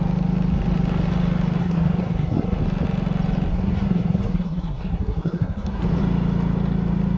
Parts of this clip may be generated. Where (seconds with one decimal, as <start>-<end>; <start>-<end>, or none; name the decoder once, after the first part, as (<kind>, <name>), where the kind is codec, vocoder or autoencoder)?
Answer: 1.6-2.6 (codec, SNAC); 3.5-5.8